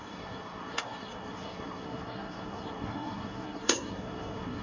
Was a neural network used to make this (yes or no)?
yes